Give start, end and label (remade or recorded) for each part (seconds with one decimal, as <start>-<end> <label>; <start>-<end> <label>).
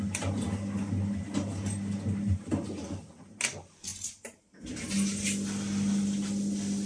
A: 0.0-3.9 recorded; 3.9-4.5 remade; 4.5-6.9 recorded